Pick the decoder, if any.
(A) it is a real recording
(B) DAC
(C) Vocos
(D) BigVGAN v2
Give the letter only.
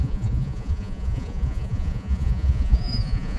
C